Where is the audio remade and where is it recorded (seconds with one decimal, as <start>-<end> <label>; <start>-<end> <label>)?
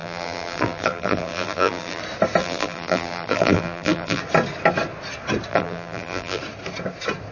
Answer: 0.0-2.0 remade; 2.0-2.4 recorded; 2.4-4.2 remade; 4.2-5.5 recorded; 5.5-6.4 remade; 6.4-7.3 recorded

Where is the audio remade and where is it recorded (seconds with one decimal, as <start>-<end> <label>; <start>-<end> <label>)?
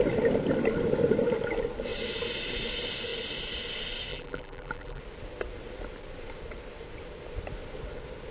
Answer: 0.0-4.1 recorded; 4.1-5.0 remade; 5.0-8.3 recorded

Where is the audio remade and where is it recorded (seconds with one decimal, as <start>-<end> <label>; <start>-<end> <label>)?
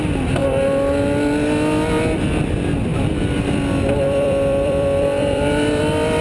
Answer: 0.0-2.9 recorded; 2.9-5.8 remade; 5.8-6.2 recorded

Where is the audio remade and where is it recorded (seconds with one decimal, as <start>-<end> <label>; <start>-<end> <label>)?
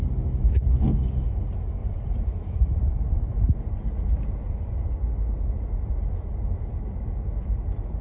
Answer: 0.0-1.8 recorded; 1.8-3.6 remade; 3.6-8.0 recorded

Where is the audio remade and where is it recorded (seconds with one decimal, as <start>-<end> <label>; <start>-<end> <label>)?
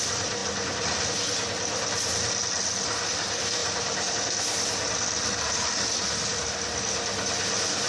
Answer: 0.0-3.6 recorded; 3.6-4.1 remade; 4.1-7.9 recorded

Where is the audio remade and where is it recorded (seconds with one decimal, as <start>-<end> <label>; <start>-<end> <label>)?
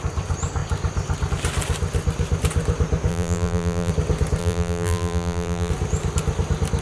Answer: 0.0-3.1 recorded; 3.1-3.9 remade; 3.9-4.4 recorded; 4.4-5.7 remade; 5.7-6.8 recorded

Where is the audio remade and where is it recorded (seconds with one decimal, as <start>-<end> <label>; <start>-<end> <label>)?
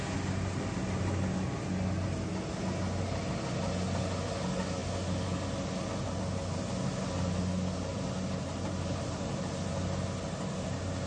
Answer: 0.0-7.9 recorded; 7.9-9.5 remade; 9.5-11.1 recorded